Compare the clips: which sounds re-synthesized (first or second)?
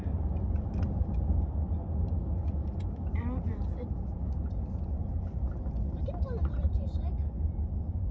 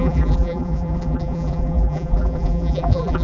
second